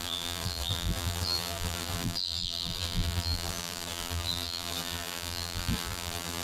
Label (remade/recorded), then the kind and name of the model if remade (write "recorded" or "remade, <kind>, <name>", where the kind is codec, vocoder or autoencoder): remade, vocoder, BigVGAN v2